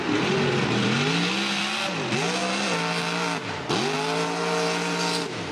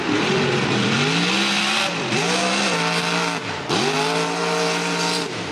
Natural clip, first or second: first